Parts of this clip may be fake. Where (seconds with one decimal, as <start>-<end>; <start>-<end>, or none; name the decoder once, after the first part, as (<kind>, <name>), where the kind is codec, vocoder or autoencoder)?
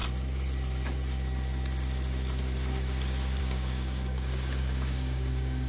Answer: 3.4-5.7 (codec, DAC)